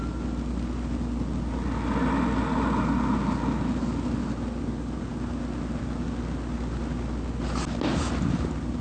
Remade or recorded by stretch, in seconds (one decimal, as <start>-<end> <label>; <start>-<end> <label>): 0.0-8.8 recorded